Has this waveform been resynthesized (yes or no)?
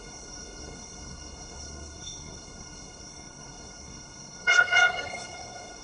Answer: yes